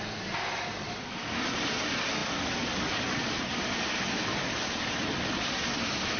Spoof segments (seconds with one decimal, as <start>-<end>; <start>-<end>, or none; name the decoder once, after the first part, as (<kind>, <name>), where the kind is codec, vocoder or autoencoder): none